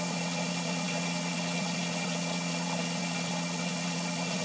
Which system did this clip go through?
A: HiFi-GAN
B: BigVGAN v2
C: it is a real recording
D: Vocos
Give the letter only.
D